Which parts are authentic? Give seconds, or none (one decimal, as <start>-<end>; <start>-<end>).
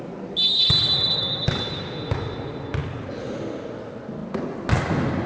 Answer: 0.0-5.3